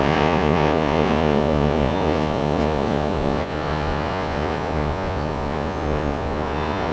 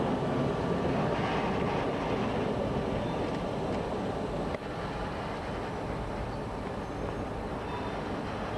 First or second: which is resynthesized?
first